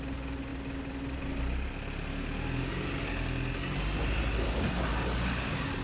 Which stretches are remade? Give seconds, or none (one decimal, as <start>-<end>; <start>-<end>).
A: none